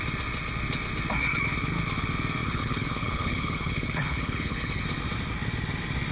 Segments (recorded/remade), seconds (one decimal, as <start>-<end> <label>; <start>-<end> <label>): 0.0-2.4 recorded; 2.4-4.8 remade; 4.8-6.1 recorded